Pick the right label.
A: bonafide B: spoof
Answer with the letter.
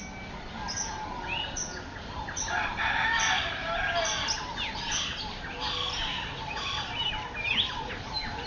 A